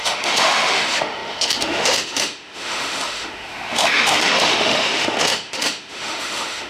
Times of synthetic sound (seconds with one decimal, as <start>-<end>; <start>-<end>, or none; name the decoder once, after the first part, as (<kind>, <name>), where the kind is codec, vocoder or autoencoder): 0.0-6.7 (autoencoder, DAC-VAE)